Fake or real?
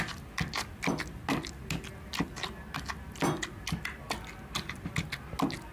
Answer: real